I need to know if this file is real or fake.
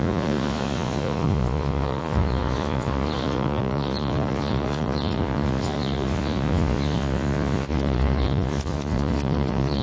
fake